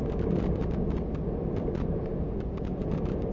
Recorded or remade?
recorded